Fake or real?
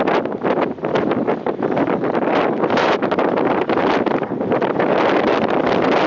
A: real